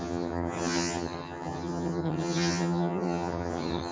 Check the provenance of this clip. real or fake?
fake